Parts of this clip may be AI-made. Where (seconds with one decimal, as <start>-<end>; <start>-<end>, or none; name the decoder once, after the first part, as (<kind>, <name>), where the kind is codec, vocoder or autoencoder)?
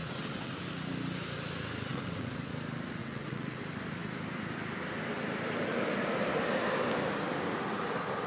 0.0-0.5 (vocoder, WaveNeXt); 1.9-2.5; 3.0-3.6